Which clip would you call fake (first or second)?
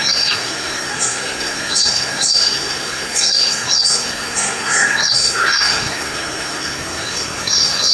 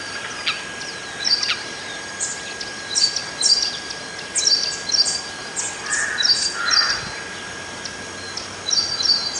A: first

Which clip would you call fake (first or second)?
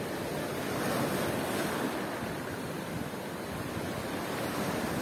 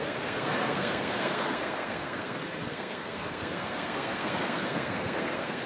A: second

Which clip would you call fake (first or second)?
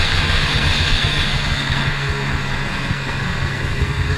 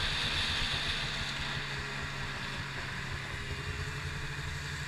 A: first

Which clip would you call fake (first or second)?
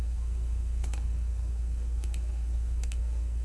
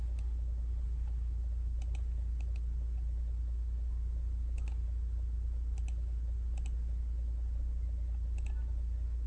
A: first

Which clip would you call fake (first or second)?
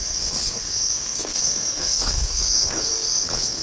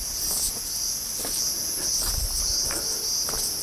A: first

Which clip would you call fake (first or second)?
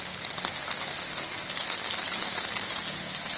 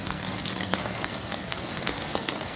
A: second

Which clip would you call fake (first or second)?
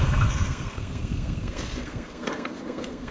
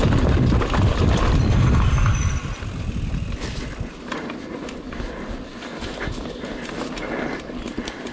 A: first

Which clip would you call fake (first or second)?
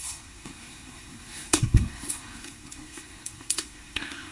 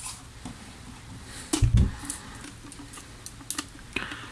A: first